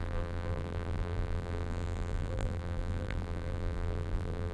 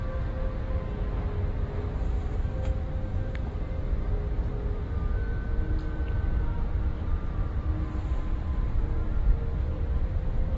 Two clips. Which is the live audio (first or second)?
second